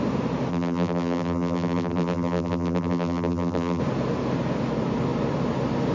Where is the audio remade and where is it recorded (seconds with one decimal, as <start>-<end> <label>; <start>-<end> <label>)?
0.0-0.5 recorded; 0.5-3.8 remade; 3.8-5.9 recorded